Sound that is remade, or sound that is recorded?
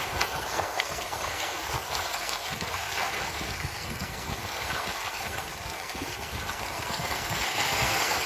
remade